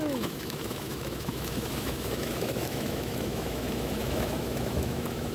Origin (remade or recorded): remade